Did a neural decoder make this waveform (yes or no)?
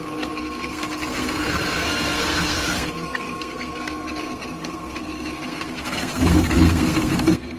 yes